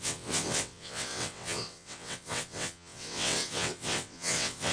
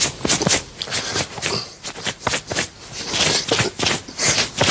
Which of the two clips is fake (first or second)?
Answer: first